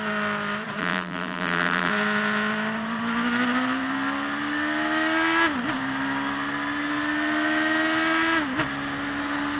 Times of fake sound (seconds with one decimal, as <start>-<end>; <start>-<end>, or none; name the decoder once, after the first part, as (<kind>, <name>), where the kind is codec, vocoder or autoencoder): 0.8-1.9 (vocoder, BigVGAN v2)